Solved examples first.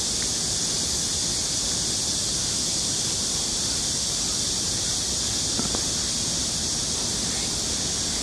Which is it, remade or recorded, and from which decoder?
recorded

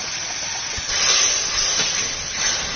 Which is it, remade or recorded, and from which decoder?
recorded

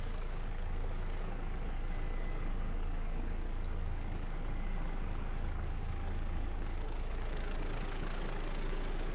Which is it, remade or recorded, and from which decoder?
remade, codec, DAC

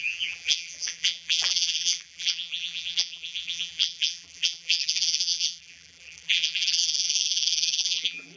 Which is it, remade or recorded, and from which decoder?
remade, vocoder, BigVGAN v2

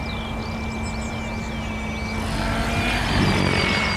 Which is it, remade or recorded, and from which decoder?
recorded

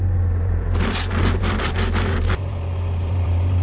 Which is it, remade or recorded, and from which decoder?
remade, vocoder, BigVGAN v2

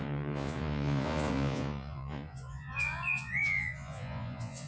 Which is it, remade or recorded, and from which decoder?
remade, vocoder, Vocos